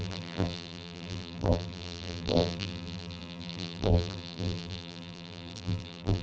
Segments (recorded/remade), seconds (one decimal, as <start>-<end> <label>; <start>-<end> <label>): 0.0-6.2 remade

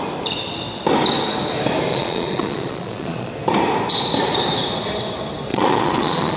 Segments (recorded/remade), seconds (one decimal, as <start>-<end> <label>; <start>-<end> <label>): 0.0-1.9 recorded; 1.9-3.3 remade; 3.3-5.5 recorded; 5.5-6.4 remade

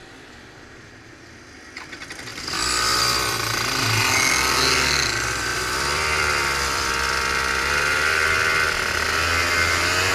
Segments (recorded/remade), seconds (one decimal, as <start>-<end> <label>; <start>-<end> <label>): 0.0-2.3 recorded; 2.3-3.0 remade; 3.0-5.5 recorded; 5.5-6.9 remade; 6.9-10.1 recorded

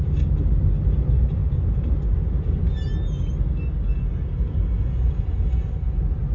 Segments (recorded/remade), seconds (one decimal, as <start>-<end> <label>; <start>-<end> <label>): 0.0-6.3 recorded

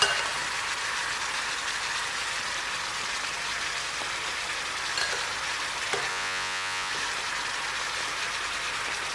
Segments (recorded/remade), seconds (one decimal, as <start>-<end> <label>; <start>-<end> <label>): 0.0-6.1 recorded; 6.1-6.9 remade; 6.9-9.1 recorded